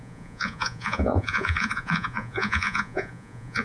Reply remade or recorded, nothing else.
remade